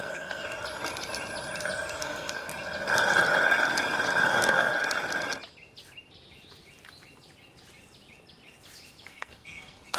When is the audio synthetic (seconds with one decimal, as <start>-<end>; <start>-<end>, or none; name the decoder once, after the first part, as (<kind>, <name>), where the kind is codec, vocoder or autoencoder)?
0.0-0.4 (codec, SNAC); 2.0-2.5; 4.3-4.7; 9.1-10.0